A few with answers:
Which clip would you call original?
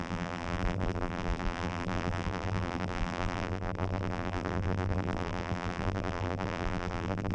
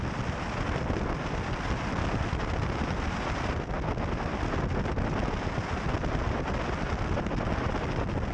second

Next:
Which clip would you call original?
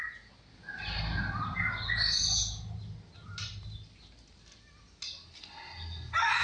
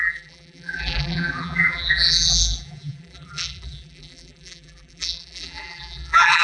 first